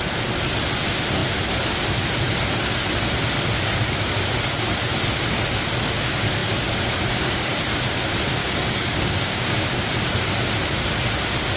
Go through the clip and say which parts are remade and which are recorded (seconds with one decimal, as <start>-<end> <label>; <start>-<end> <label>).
0.0-8.4 recorded; 8.4-9.7 remade; 9.7-11.6 recorded